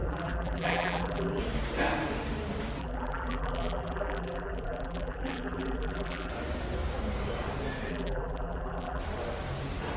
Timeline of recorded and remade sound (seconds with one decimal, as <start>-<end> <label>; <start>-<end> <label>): 0.0-1.4 remade; 1.4-2.8 recorded; 2.8-6.3 remade; 6.3-7.9 recorded; 7.9-9.0 remade; 9.0-10.0 recorded